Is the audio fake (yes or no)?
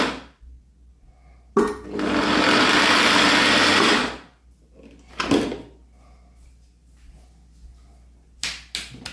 no